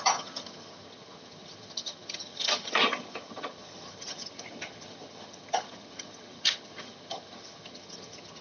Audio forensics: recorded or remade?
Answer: remade